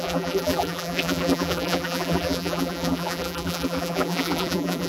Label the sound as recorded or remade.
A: remade